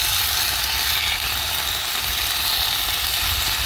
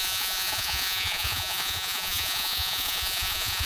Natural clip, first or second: first